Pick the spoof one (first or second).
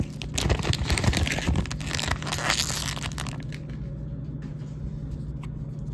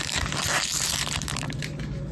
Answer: second